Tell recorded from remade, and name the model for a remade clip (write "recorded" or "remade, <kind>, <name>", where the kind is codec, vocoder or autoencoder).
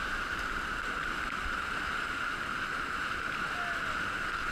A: recorded